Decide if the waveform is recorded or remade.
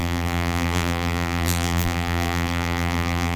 remade